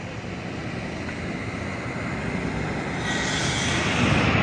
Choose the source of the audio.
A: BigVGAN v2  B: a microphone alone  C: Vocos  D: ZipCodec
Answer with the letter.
B